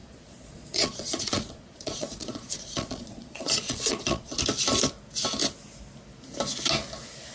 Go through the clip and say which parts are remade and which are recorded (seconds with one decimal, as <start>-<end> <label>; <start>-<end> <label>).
0.0-4.4 remade; 4.4-7.3 recorded